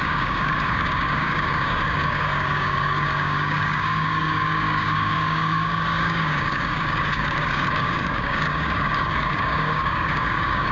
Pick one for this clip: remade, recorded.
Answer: remade